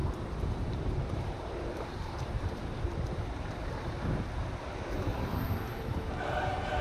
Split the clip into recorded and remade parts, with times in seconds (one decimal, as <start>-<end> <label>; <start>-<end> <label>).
0.0-3.9 remade; 3.9-5.1 recorded; 5.1-6.8 remade